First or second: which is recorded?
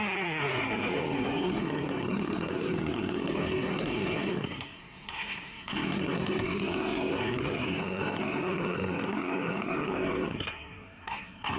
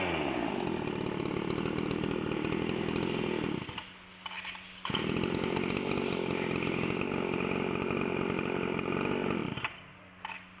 second